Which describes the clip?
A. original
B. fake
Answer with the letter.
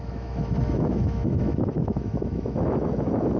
B